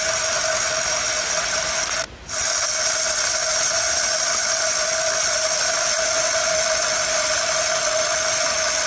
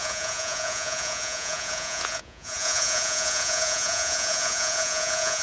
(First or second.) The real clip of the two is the first